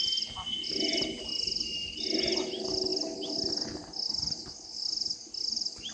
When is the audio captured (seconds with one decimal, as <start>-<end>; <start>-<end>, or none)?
0.0-5.9